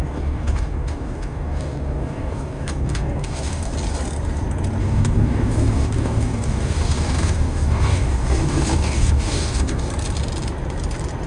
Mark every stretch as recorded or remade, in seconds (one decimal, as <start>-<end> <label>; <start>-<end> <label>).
0.0-3.7 remade; 3.7-4.8 recorded; 4.8-9.9 remade; 9.9-11.3 recorded

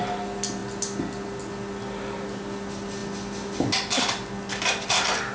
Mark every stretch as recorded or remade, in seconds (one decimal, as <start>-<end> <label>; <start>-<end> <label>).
0.0-5.3 recorded

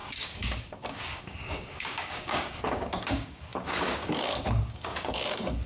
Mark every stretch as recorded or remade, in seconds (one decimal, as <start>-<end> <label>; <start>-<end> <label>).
0.0-5.7 remade